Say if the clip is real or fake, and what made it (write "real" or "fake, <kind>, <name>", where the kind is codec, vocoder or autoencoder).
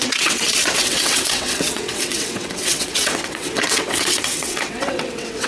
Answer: fake, vocoder, WaveNeXt